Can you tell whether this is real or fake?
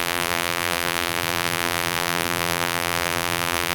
fake